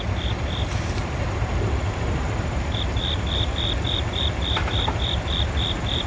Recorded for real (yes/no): no